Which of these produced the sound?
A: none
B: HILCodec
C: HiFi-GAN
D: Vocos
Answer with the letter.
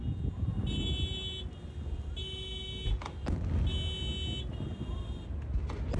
A